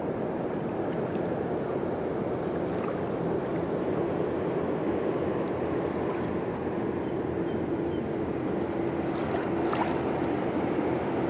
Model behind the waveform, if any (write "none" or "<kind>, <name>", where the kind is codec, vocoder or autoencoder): none